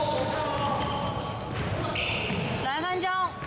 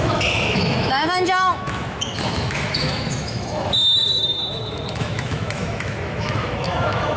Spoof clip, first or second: second